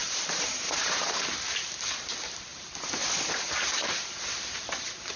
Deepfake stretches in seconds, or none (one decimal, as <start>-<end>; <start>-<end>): none

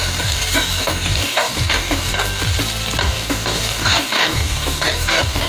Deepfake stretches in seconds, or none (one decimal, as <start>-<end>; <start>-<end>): 0.0-2.4; 3.0-5.5

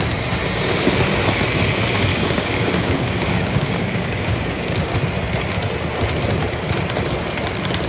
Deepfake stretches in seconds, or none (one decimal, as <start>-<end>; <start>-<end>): 2.1-4.9